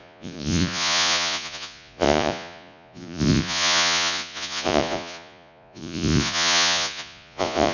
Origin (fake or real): fake